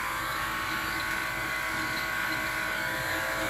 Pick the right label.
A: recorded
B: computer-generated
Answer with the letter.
B